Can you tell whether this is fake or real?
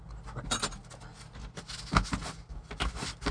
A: real